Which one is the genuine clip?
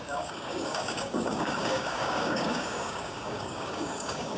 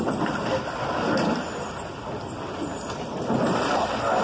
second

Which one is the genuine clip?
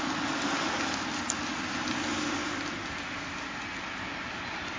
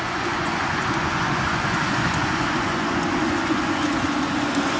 first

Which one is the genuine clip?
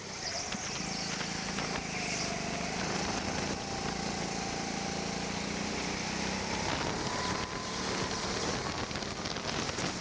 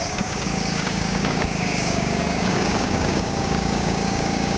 first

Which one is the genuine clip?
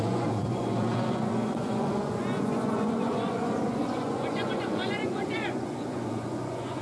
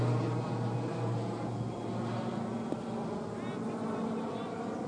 second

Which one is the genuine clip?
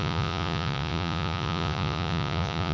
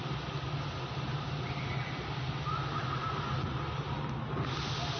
second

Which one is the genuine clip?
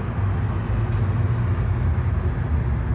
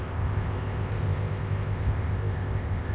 first